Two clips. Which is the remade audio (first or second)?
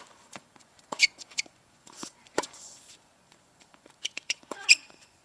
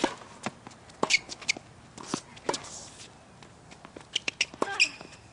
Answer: first